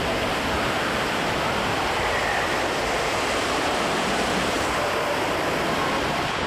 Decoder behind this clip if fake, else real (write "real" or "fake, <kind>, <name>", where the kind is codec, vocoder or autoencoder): fake, vocoder, BigVGAN v2